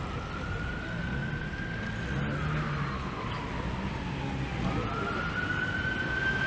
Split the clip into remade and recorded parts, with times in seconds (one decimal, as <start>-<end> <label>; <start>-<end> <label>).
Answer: 0.0-6.5 recorded